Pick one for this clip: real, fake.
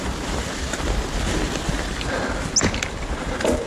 real